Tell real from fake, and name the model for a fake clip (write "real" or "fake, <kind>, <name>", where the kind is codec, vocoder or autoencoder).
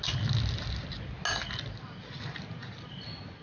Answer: real